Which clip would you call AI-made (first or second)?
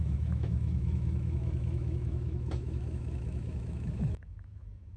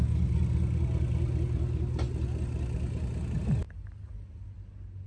first